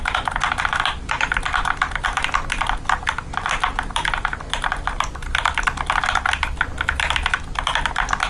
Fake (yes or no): no